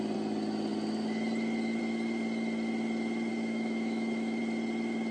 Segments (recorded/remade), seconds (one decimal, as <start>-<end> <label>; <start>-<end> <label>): 0.0-3.3 recorded; 3.3-4.4 remade; 4.4-5.1 recorded